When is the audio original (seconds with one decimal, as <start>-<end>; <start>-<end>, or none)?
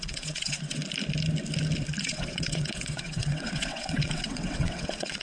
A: 0.8-2.0